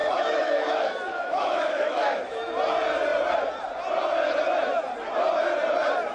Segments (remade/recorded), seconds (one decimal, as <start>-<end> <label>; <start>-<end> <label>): 0.0-2.5 remade; 2.5-6.1 recorded